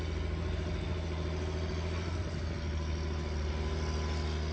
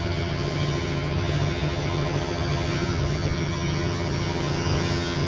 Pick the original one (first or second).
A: first